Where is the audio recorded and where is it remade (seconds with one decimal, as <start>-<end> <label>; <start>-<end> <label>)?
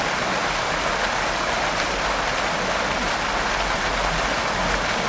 0.0-5.1 recorded